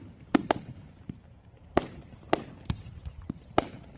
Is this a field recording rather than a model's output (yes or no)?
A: no